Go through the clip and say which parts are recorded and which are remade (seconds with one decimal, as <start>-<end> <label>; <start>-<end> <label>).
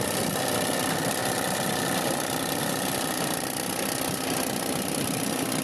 0.0-5.6 recorded